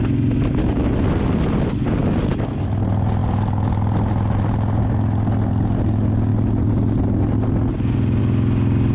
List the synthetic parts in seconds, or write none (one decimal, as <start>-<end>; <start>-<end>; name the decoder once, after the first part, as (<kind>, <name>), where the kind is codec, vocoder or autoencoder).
none